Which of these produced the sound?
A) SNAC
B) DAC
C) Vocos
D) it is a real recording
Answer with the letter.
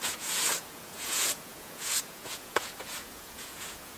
C